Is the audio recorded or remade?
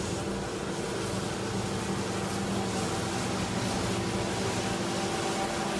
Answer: recorded